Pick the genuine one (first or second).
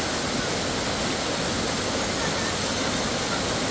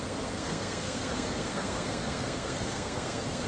first